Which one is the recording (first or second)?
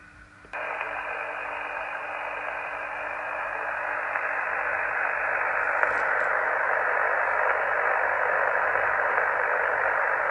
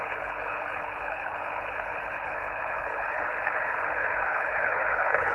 first